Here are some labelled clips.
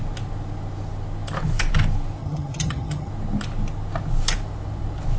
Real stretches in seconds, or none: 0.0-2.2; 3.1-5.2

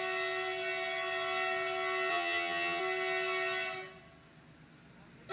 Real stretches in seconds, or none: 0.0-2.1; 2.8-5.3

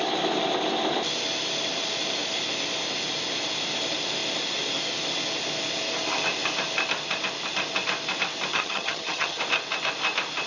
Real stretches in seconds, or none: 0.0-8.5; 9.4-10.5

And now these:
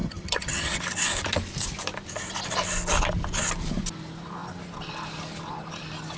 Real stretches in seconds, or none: 0.8-6.2

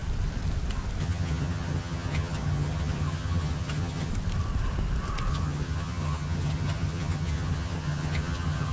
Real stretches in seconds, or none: 0.0-1.0; 4.1-5.3